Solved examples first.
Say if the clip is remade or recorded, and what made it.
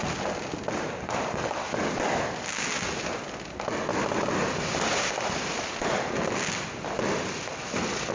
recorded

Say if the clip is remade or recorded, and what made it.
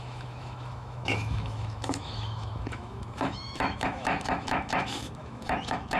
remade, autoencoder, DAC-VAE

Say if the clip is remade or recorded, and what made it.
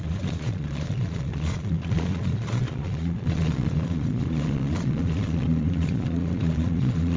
remade, vocoder, Vocos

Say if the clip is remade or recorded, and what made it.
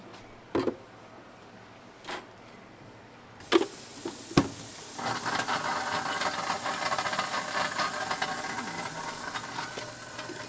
recorded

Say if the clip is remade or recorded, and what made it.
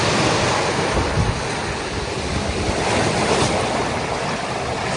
recorded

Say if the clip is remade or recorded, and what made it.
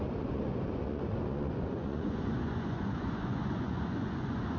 remade, vocoder, Vocos